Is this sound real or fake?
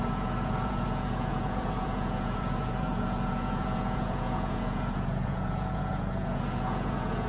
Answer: fake